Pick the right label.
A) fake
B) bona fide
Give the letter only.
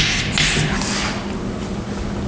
B